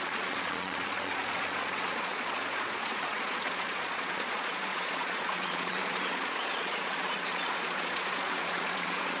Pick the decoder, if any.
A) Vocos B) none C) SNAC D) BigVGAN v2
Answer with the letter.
A